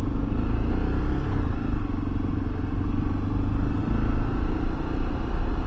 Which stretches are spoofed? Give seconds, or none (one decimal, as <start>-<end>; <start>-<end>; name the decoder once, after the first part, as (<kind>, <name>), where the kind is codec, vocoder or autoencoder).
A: none